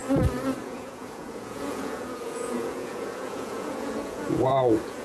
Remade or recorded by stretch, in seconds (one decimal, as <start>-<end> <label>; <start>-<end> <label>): 0.0-0.6 recorded; 0.6-5.0 remade